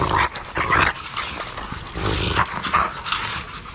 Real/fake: real